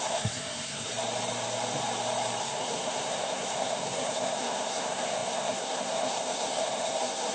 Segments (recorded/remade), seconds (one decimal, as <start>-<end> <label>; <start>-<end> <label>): 0.0-0.9 remade; 0.9-2.4 recorded; 2.4-7.3 remade